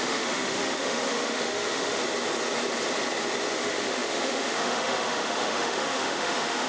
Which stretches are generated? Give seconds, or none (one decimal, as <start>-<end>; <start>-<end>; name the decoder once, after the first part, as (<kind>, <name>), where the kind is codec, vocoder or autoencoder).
0.0-2.0 (autoencoder, DAC-VAE); 3.5-6.7